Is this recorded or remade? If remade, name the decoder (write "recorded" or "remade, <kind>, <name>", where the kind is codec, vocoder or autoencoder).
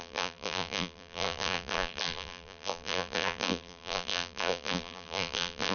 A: remade, vocoder, BigVGAN v2